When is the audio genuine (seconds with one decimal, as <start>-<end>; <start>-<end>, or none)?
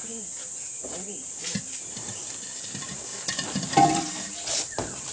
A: 0.0-5.1